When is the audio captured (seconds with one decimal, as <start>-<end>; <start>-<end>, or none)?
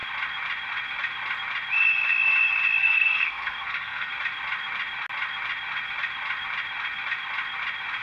0.0-2.8; 4.1-8.0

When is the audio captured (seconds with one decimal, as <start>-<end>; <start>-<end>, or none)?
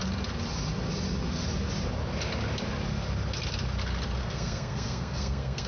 0.0-4.2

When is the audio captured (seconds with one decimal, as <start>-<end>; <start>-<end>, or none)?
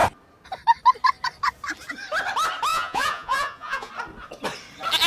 0.0-2.7; 3.9-5.1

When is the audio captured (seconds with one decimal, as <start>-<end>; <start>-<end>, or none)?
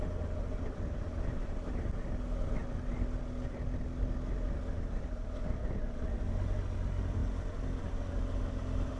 0.0-9.0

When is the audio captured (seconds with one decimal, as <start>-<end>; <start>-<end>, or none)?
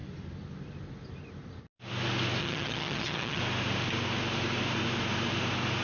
0.0-2.4; 3.4-5.8